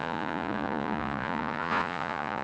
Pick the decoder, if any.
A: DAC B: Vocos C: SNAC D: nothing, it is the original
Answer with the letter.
B